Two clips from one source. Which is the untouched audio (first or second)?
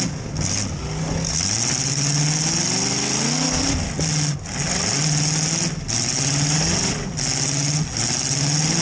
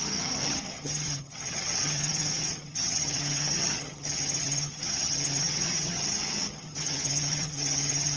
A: first